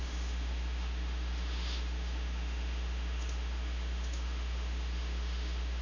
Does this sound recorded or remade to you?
remade